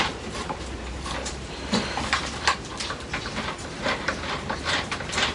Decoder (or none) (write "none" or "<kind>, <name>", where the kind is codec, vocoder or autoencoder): vocoder, BigVGAN v2